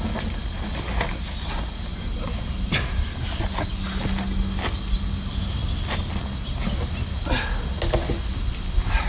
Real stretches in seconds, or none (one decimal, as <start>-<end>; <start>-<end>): 0.0-9.1